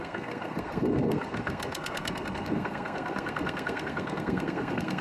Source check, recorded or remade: remade